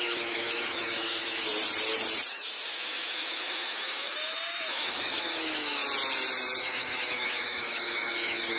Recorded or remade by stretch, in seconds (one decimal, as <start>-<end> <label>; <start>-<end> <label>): 0.0-1.5 remade; 1.5-2.3 recorded; 2.3-5.8 remade; 5.8-6.6 recorded; 6.6-8.6 remade